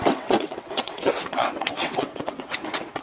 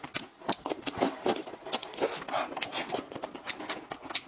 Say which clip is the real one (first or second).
second